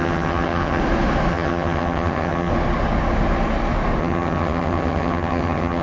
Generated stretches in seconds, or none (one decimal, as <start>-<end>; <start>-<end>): 0.0-0.8; 1.3-2.5; 4.0-5.8